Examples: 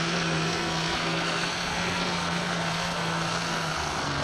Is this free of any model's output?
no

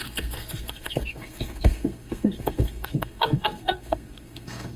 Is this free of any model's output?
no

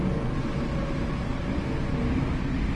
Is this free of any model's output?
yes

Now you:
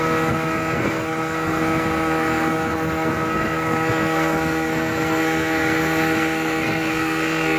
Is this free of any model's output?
no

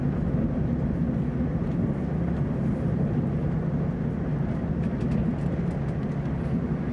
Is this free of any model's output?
yes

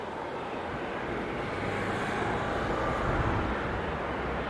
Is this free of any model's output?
yes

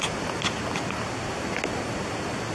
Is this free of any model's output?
yes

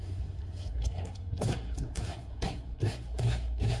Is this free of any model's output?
no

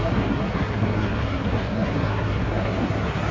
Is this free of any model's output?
no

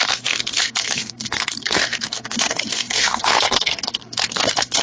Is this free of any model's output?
no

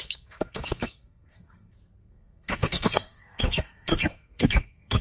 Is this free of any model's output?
no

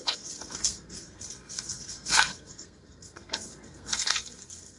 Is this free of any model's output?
no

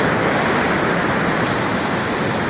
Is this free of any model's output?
yes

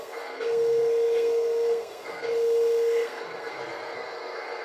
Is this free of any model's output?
no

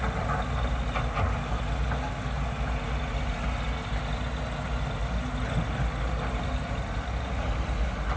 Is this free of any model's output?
yes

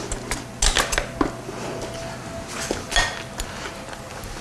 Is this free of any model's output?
yes